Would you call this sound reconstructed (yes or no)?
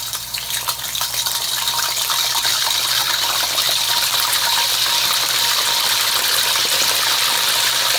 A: yes